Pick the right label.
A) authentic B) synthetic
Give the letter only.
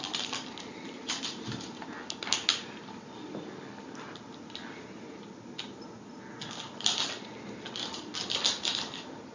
A